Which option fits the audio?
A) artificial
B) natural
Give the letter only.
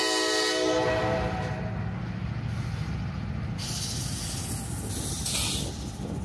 B